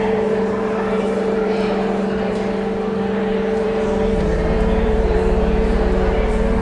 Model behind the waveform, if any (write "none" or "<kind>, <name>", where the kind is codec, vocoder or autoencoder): vocoder, BigVGAN v2